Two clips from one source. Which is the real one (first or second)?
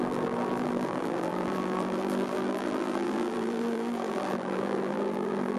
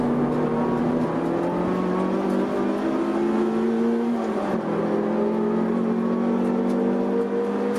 second